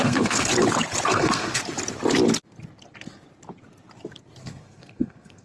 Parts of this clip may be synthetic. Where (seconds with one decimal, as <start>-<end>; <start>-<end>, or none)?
0.0-0.5; 1.1-1.6; 4.4-5.4